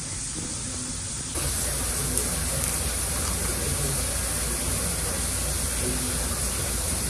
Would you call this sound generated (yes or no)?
no